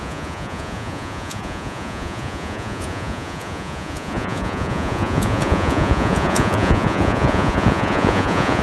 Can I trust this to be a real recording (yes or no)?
no